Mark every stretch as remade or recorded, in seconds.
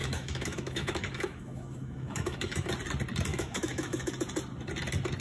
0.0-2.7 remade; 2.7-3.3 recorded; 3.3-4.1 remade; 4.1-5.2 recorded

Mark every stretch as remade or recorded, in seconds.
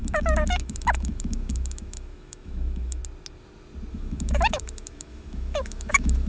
0.0-3.0 remade; 3.0-3.9 recorded; 3.9-6.3 remade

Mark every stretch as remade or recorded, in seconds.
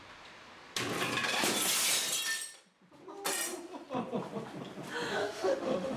0.0-5.2 recorded; 5.2-6.0 remade